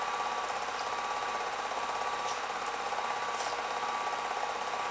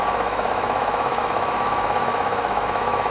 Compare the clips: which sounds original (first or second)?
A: first